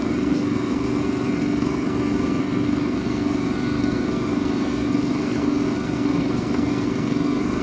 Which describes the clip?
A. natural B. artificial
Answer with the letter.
B